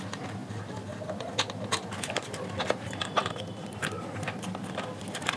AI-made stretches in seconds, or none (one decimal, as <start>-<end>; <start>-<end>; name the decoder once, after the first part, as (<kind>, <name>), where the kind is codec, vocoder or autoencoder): none